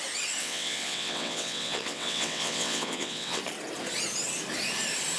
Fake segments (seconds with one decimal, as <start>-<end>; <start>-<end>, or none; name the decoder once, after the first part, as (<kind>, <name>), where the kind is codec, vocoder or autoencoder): 0.4-3.4 (vocoder, WaveNeXt)